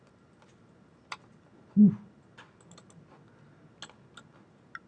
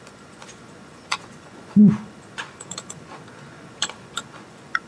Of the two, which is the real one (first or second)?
first